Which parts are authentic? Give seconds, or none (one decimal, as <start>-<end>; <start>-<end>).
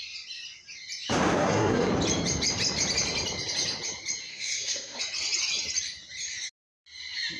0.0-1.4; 1.9-4.3; 5.0-7.4